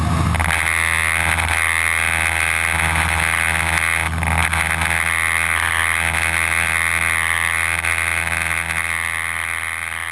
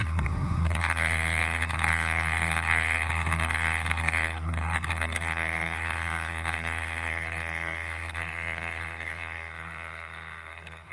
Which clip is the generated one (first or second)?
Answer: second